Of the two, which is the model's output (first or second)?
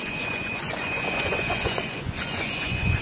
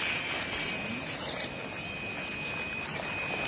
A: first